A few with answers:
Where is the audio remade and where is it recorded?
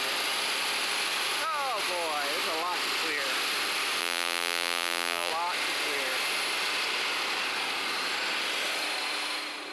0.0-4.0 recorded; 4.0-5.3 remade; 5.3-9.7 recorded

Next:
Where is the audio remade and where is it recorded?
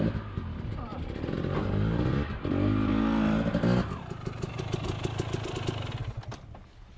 0.0-7.0 recorded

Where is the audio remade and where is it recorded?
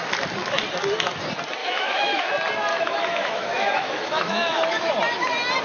0.0-1.6 recorded; 1.6-2.3 remade; 2.3-2.7 recorded; 2.7-4.9 remade; 4.9-5.6 recorded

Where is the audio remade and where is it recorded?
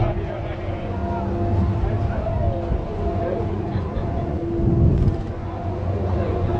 0.0-1.0 remade; 1.0-2.7 recorded; 2.7-4.4 remade; 4.4-4.9 recorded; 4.9-6.6 remade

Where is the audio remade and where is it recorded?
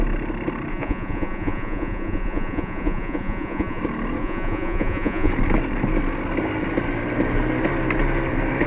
0.0-0.7 recorded; 0.7-3.8 remade; 3.8-4.2 recorded; 4.2-5.3 remade; 5.3-8.7 recorded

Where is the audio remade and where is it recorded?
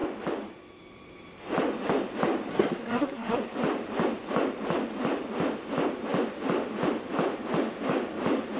0.0-2.5 recorded; 2.5-3.4 remade; 3.4-8.6 recorded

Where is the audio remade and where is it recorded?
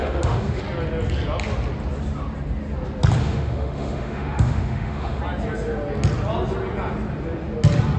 0.0-0.6 remade; 0.6-3.2 recorded; 3.2-5.2 remade; 5.2-8.0 recorded